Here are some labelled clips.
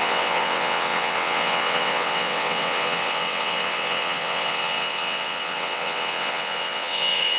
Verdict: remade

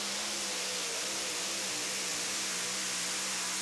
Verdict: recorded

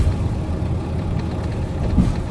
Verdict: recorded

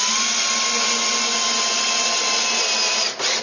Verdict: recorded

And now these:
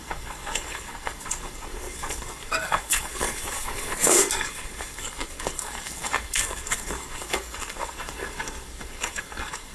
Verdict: remade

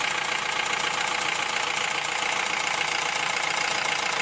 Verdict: recorded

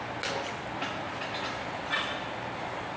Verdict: recorded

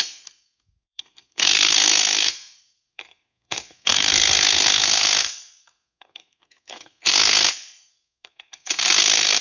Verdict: remade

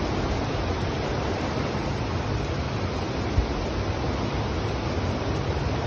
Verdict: recorded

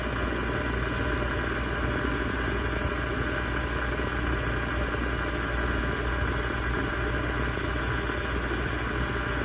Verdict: recorded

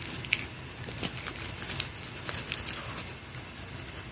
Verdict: recorded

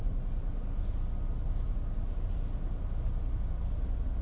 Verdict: recorded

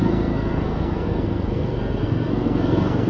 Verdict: remade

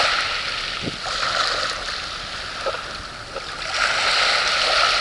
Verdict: recorded